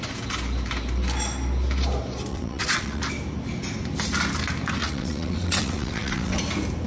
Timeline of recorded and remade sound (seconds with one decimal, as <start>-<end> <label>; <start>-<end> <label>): 0.0-2.3 recorded; 2.3-3.0 remade; 3.0-4.8 recorded; 4.8-6.4 remade; 6.4-6.9 recorded